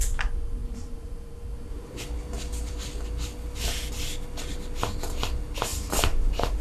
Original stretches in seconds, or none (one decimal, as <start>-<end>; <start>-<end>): 0.0-0.6; 2.0-5.7